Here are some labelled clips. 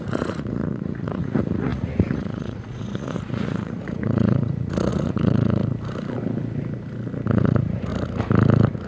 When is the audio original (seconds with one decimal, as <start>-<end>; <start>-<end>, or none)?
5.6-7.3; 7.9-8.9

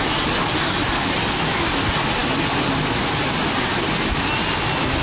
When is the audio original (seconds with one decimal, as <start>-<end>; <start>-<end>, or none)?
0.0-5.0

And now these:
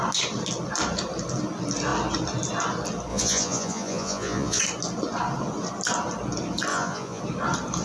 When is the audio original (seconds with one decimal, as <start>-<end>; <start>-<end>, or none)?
0.0-3.1; 4.6-6.7; 7.2-7.8